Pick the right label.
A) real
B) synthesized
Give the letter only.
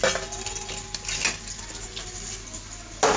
A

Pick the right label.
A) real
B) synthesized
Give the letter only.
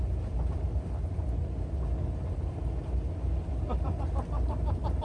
A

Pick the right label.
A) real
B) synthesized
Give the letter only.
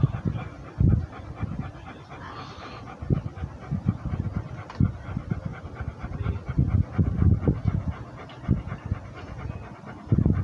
A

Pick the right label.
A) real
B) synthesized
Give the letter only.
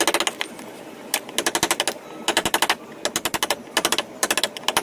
A